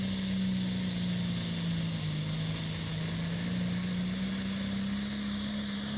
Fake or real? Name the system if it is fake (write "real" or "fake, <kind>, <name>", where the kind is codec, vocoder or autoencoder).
real